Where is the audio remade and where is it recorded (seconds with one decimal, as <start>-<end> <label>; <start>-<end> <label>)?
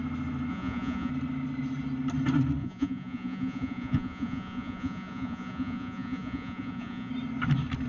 0.0-0.5 recorded; 0.5-1.1 remade; 1.1-2.6 recorded; 2.6-7.1 remade; 7.1-7.9 recorded